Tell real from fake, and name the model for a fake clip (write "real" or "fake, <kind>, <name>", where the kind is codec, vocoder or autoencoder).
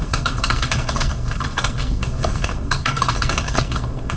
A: fake, codec, SNAC